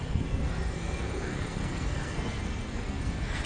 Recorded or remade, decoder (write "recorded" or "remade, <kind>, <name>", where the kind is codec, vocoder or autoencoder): remade, codec, SNAC